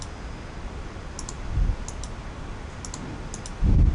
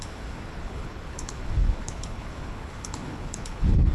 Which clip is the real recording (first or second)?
first